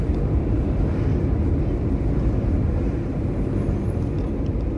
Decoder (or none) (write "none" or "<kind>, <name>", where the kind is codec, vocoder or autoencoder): none